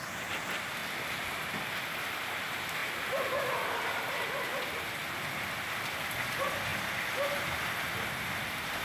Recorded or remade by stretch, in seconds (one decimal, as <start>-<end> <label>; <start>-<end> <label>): 0.0-0.8 recorded; 0.8-2.2 remade; 2.2-6.7 recorded; 6.7-7.3 remade; 7.3-8.8 recorded